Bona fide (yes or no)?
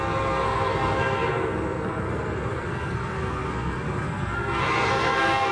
no